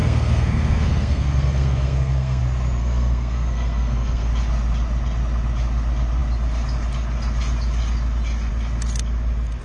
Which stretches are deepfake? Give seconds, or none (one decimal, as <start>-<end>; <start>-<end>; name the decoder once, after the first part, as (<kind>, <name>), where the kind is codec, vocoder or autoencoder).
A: 0.0-2.4 (codec, SNAC); 2.8-4.3